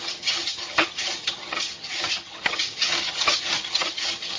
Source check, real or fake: fake